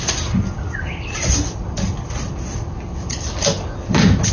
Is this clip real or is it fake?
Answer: real